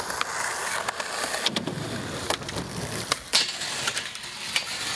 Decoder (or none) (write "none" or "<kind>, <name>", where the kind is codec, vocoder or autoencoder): none